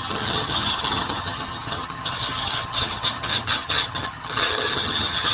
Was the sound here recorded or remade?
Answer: remade